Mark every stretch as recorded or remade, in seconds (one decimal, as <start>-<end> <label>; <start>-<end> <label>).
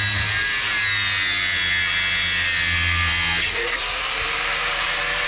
0.0-3.8 recorded; 3.8-5.3 remade